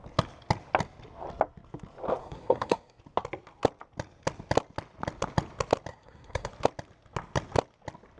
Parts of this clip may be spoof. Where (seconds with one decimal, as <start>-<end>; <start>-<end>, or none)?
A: 2.2-3.0; 5.9-6.5

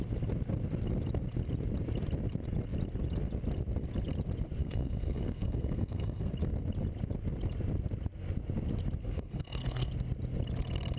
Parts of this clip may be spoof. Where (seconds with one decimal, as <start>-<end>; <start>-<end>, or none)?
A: 4.6-6.3; 9.0-9.9

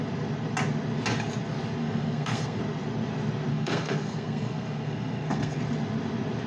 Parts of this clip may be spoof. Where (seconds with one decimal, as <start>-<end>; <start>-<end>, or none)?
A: 1.8-2.6; 3.5-5.6

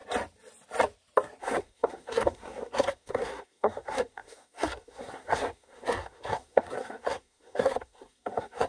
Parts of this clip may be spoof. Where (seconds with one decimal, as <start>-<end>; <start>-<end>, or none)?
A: 1.4-8.7